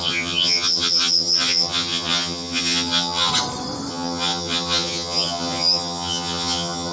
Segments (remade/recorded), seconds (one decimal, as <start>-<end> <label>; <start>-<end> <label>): 0.0-3.3 remade; 3.3-3.9 recorded; 3.9-6.9 remade